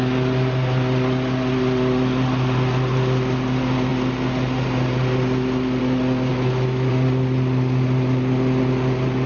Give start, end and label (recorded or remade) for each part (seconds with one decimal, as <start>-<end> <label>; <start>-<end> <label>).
0.0-6.3 recorded; 6.3-6.9 remade; 6.9-9.3 recorded

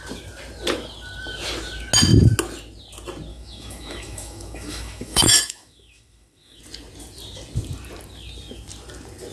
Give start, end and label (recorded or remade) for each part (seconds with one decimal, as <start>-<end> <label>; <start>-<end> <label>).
0.0-3.3 recorded; 3.3-6.6 remade; 6.6-9.3 recorded